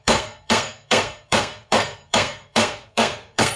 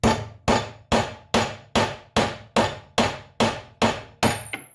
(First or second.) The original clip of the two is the second